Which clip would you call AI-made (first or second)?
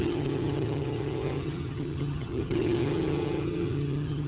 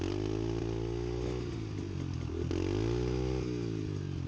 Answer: first